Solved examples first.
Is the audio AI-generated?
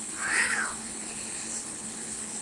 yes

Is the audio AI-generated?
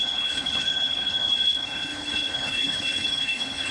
yes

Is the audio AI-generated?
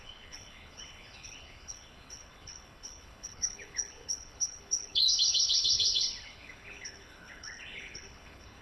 yes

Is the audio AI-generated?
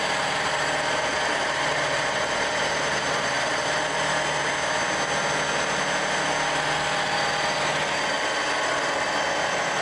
no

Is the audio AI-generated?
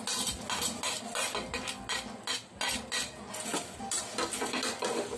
no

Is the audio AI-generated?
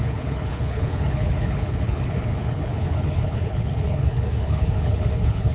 yes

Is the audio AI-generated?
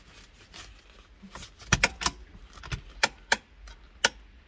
no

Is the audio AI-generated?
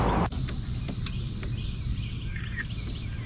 no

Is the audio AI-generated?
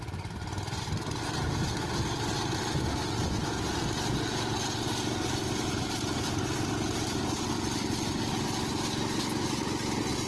no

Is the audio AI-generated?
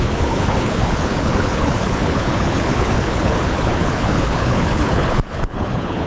yes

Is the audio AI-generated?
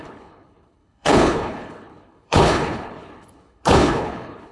yes